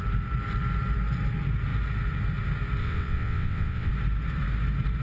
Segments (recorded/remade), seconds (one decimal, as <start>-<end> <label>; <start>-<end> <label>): 0.0-2.8 recorded; 2.8-3.9 remade; 3.9-5.0 recorded